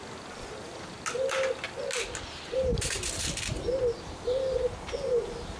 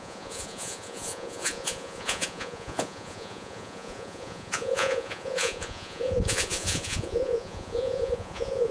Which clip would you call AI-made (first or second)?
second